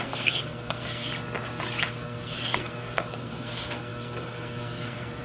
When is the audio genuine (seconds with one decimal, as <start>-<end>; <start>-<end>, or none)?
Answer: 1.1-1.9